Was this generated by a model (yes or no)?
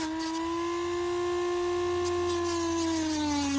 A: no